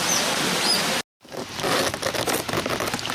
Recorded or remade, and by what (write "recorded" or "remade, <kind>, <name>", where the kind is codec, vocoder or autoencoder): recorded